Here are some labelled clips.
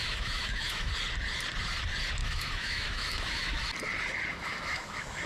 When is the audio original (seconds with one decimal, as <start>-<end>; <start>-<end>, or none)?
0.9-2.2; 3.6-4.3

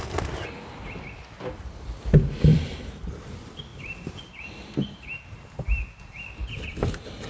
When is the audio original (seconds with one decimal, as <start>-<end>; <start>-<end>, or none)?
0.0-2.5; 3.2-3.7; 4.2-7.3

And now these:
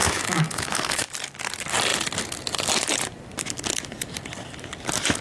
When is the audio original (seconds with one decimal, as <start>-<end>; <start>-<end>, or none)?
1.1-5.2

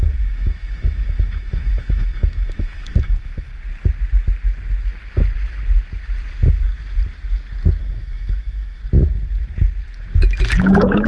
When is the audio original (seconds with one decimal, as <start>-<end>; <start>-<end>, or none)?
3.5-7.8; 8.8-10.6

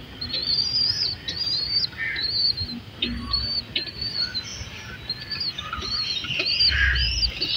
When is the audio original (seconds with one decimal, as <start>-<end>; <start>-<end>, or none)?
0.0-7.6

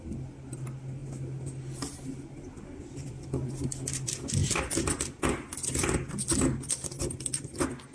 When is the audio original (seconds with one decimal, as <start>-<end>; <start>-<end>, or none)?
0.0-7.9

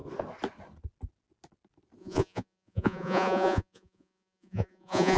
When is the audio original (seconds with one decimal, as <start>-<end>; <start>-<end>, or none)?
0.0-2.0